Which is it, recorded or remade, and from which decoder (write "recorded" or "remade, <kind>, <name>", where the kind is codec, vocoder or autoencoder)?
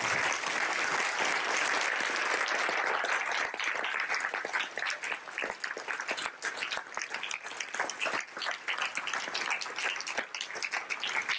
recorded